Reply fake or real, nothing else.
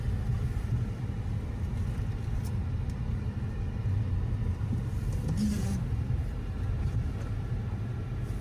real